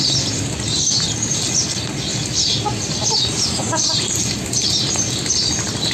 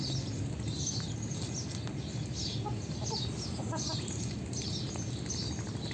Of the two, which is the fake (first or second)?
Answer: first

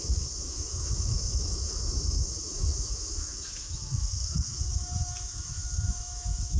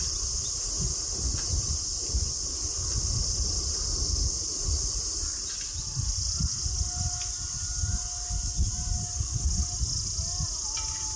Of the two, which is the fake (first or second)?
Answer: first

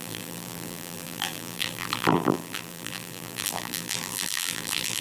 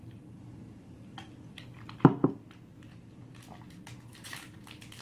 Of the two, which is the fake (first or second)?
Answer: first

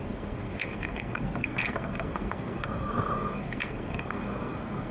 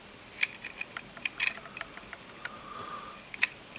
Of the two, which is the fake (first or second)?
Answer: first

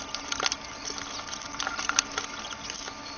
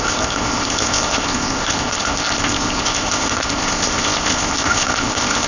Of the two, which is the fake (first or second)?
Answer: second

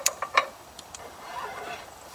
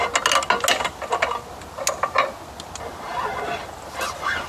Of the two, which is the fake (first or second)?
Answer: first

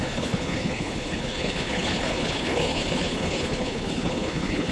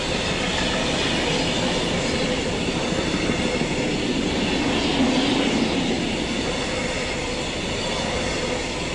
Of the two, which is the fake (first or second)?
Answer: first